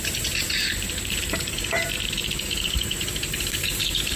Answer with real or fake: fake